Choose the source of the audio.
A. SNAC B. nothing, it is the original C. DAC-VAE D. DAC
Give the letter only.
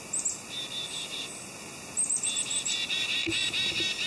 B